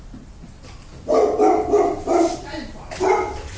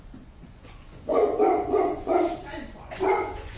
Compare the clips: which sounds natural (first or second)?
first